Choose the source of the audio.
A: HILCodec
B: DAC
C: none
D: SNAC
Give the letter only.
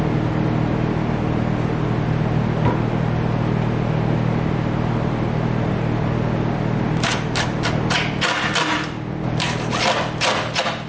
C